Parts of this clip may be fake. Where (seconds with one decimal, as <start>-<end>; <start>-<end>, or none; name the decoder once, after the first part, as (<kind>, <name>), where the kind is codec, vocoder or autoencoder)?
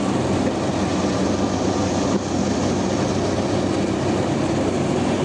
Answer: none